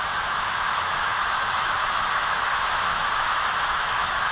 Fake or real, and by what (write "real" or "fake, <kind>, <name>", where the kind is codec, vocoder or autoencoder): fake, autoencoder, DAC-VAE